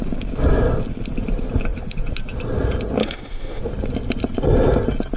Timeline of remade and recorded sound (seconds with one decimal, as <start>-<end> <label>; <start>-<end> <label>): 0.0-3.0 recorded; 3.0-3.6 remade; 3.6-5.2 recorded